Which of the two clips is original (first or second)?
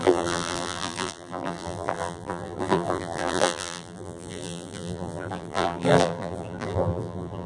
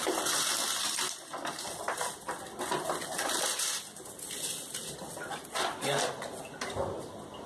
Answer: second